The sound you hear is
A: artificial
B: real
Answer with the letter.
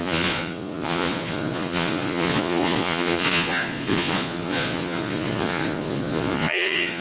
A